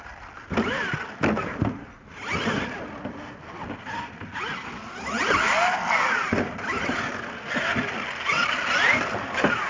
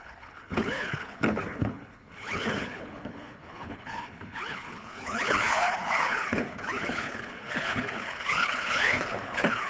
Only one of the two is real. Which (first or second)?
first